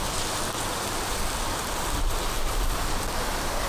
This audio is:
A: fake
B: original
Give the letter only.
A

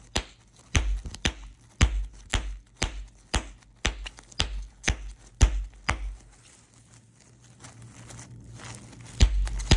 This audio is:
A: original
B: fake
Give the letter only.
A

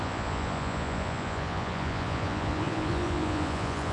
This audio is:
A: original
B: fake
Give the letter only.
B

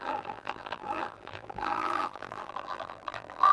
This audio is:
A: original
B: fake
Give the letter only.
B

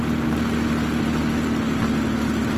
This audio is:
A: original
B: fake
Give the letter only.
A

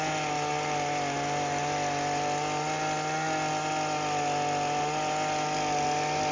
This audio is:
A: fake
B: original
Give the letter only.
B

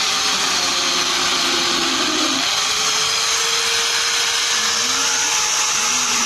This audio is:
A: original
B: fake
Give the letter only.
A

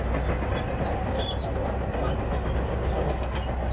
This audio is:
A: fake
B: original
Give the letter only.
B